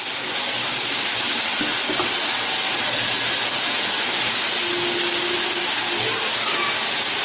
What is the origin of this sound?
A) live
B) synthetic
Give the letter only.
A